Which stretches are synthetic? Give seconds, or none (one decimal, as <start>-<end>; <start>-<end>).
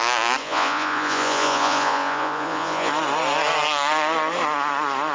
0.4-2.9